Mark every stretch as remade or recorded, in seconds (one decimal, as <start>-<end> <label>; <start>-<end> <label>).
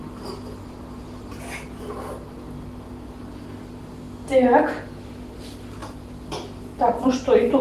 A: 0.0-0.6 remade; 0.6-5.8 recorded; 5.8-7.6 remade